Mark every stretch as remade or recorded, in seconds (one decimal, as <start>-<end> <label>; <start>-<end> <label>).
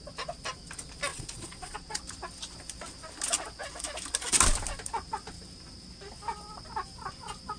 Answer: 0.0-1.1 recorded; 1.1-2.0 remade; 2.0-7.6 recorded